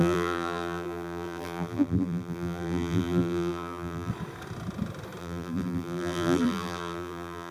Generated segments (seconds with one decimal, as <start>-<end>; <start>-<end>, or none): 0.0-4.1; 5.2-7.5